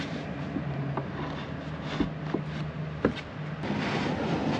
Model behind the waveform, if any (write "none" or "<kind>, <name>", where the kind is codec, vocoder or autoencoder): none